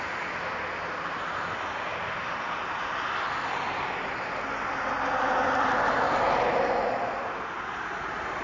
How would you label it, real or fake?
real